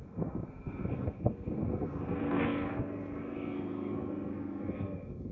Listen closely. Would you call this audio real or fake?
fake